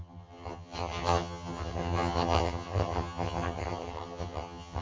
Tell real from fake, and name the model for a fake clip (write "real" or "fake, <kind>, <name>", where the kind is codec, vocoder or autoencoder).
fake, vocoder, HiFi-GAN